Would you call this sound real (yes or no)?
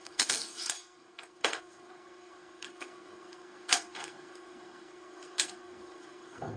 no